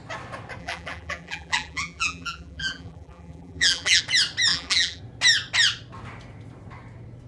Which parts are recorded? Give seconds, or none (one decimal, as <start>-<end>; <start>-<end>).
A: 0.0-0.6; 4.0-4.5; 5.0-7.3